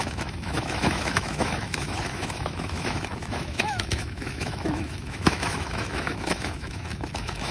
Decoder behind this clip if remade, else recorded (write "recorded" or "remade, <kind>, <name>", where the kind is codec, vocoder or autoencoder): remade, autoencoder, DAC-VAE